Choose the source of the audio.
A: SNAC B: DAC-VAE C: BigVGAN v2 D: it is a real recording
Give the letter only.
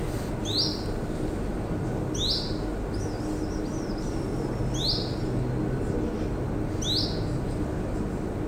D